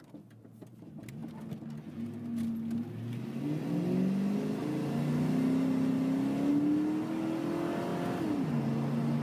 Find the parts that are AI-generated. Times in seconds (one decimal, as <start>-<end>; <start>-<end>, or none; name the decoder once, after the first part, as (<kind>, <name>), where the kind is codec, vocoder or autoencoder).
none